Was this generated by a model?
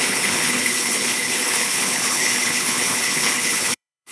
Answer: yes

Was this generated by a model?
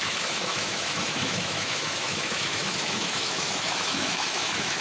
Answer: yes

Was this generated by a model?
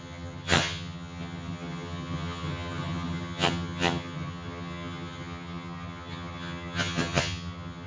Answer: yes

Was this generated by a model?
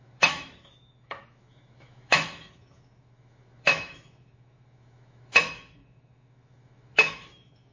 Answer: yes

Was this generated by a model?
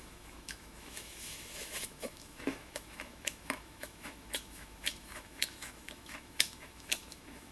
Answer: yes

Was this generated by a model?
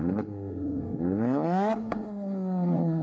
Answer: yes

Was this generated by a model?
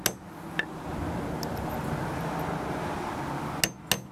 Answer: no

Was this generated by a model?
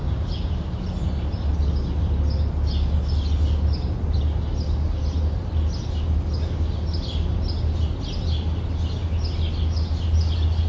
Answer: no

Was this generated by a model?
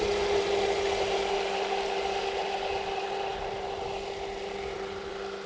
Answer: no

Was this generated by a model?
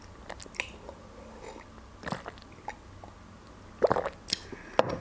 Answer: no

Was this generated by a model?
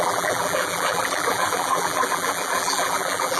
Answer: yes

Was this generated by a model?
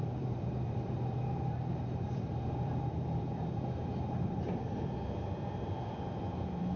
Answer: yes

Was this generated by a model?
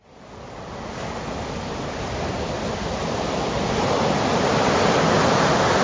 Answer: no